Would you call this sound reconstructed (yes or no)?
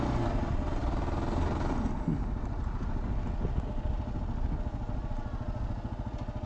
no